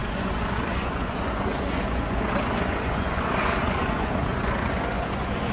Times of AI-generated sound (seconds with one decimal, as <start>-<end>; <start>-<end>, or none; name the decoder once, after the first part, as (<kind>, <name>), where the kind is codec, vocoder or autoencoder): 0.0-5.5 (vocoder, Vocos)